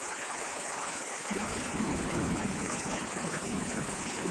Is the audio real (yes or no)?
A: no